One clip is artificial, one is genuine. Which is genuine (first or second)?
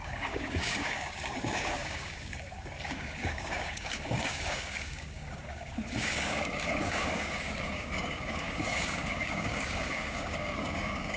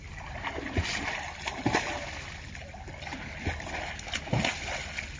second